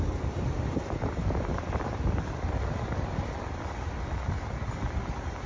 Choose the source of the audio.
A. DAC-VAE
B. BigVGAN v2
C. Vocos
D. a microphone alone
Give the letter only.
D